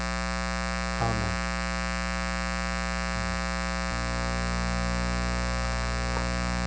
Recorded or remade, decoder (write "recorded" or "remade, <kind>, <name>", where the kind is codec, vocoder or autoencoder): recorded